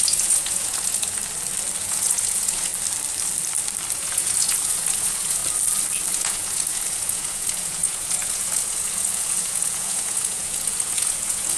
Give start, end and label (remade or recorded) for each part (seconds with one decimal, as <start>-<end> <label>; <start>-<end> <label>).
0.0-1.2 remade; 1.2-1.8 recorded; 1.8-2.7 remade; 2.7-3.9 recorded; 3.9-5.4 remade; 5.4-6.1 recorded; 6.1-11.6 remade